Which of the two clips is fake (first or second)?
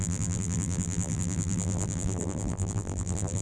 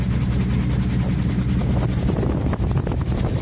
first